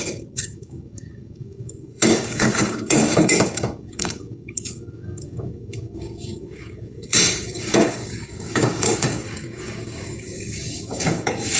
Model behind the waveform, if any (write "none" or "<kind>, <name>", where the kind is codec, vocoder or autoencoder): codec, DAC